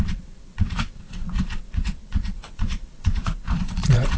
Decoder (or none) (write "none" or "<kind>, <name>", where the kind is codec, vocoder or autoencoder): vocoder, WaveNeXt